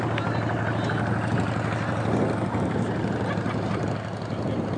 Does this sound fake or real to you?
real